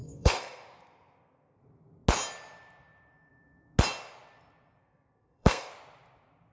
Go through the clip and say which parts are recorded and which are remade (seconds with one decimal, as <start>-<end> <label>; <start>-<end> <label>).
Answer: 0.0-1.6 remade; 1.6-4.8 recorded; 4.8-5.7 remade; 5.7-6.5 recorded